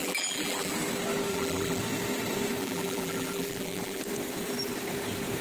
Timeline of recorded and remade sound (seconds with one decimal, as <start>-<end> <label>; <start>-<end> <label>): 0.0-0.7 remade; 0.7-1.3 recorded; 1.3-1.8 remade; 1.8-2.6 recorded; 2.6-4.0 remade; 4.0-5.4 recorded